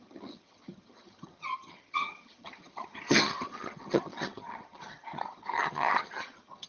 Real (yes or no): no